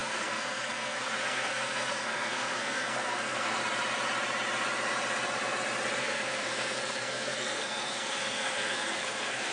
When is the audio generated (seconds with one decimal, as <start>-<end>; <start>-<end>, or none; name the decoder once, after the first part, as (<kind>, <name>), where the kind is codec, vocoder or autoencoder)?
0.0-3.6 (codec, SNAC); 6.0-9.5